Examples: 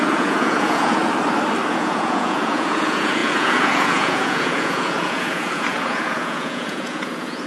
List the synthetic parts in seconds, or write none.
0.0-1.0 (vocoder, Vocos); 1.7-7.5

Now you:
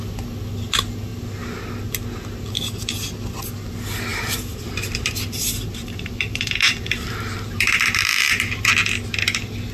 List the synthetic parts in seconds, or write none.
4.1-8.7 (vocoder, BigVGAN v2)

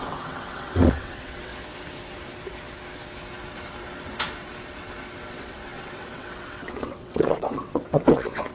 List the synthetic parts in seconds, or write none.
0.0-1.5 (vocoder, WaveNeXt); 5.2-8.5

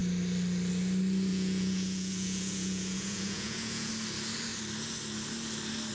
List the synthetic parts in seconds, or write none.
1.3-3.9 (vocoder, Vocos)

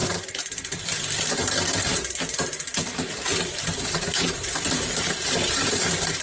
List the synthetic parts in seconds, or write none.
1.2-6.2 (vocoder, BigVGAN v2)

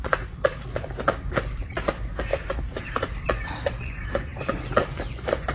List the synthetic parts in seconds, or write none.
0.0-5.5 (vocoder, Vocos)

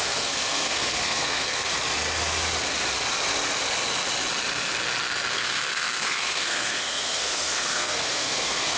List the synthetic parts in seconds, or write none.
0.0-1.7 (codec, SNAC); 5.3-8.8

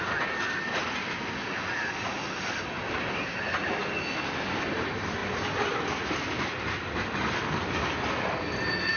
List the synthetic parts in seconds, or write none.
none